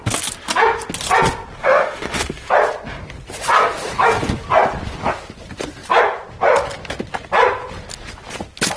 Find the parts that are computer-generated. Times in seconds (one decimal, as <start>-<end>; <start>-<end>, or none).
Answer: 1.6-2.5